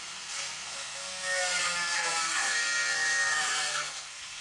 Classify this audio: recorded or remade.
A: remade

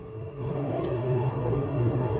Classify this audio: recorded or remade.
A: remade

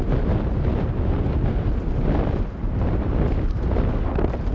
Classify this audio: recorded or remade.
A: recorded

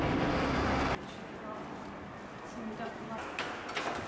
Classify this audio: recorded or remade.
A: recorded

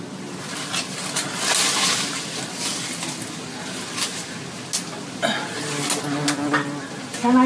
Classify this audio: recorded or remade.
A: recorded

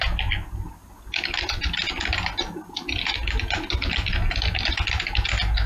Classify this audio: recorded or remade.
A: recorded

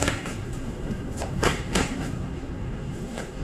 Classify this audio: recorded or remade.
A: remade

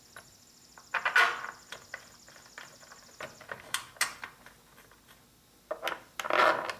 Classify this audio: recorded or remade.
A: recorded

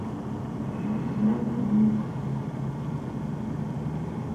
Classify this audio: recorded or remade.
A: recorded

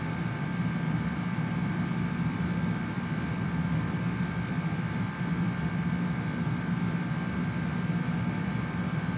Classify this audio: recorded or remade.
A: recorded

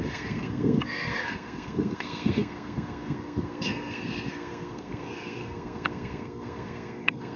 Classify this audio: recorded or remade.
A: remade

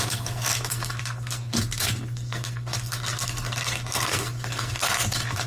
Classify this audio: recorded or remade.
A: remade